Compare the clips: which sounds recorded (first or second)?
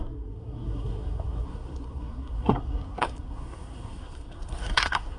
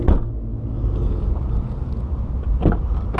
second